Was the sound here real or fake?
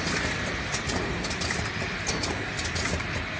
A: real